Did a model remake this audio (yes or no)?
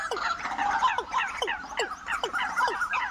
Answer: no